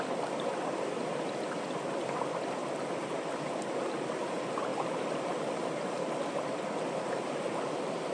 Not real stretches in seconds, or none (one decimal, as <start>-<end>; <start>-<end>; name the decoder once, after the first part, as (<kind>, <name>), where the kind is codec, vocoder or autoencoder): none